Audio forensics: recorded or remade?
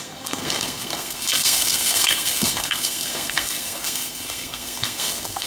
remade